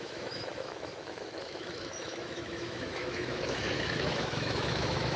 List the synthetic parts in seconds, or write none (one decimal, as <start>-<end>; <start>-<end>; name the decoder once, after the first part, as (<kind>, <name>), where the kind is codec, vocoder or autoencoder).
0.0-5.2 (autoencoder, DAC-VAE)